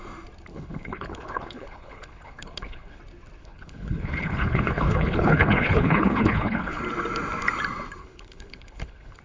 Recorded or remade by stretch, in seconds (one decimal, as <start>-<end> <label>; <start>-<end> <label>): 0.0-0.5 recorded; 0.5-3.0 remade; 3.0-3.4 recorded; 3.4-6.8 remade; 6.8-8.0 recorded; 8.0-9.2 remade